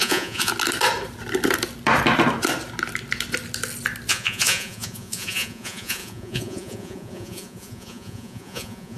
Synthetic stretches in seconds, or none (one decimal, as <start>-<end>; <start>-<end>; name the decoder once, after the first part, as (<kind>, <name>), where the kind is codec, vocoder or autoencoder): 0.0-0.5 (vocoder, Vocos); 4.1-9.0